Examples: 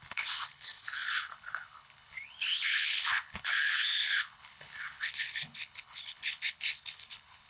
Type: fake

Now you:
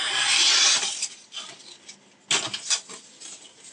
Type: real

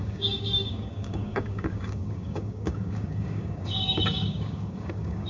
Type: fake